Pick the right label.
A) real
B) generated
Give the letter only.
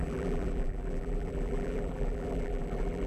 B